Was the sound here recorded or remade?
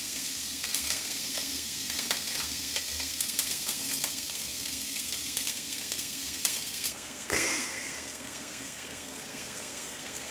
remade